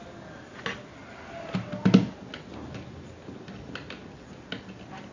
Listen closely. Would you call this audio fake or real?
real